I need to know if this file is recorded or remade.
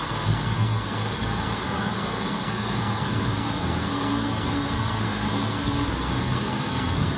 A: remade